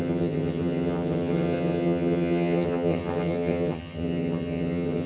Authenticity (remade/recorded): remade